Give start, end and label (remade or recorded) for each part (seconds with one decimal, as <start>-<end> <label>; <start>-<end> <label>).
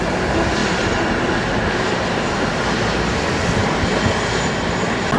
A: 0.0-0.6 recorded; 0.6-1.2 remade; 1.2-5.2 recorded